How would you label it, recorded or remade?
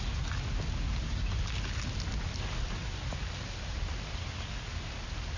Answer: recorded